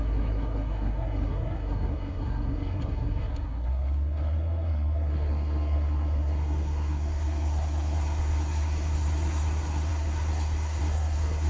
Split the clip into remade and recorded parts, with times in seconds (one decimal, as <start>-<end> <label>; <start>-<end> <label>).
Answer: 0.0-11.5 remade